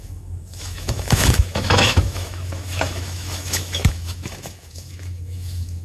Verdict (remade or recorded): remade